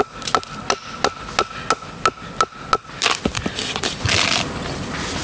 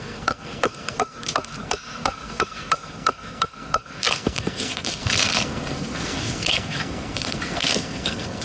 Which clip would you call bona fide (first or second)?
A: first